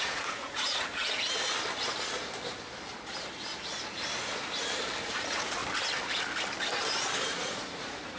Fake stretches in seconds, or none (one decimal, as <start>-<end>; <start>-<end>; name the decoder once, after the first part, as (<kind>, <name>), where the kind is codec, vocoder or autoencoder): 0.0-0.9 (vocoder, Vocos); 5.0-5.6; 7.2-8.2